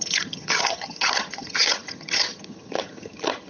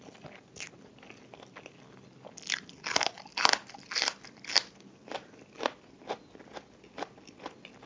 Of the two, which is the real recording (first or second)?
second